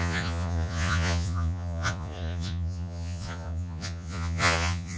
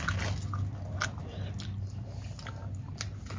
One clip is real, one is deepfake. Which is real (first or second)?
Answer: second